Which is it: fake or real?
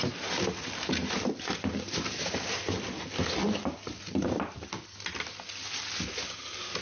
real